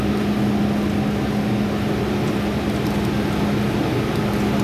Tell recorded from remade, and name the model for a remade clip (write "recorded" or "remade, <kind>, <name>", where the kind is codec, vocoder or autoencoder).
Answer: recorded